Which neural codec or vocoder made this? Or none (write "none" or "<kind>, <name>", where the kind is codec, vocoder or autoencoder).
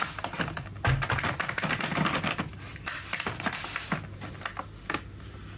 none